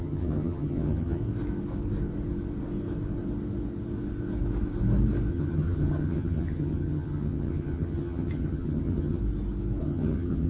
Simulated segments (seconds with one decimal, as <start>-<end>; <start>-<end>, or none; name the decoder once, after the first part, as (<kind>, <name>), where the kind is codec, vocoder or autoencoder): 0.0-1.2 (vocoder, HiFi-GAN); 5.3-9.2; 9.8-10.5